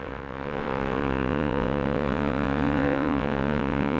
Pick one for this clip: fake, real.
fake